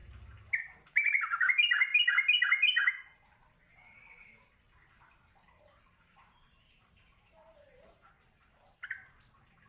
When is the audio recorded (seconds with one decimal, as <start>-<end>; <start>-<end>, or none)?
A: 0.0-0.9; 1.9-5.6